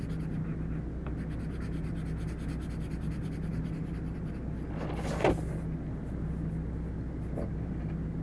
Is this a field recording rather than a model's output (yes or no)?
yes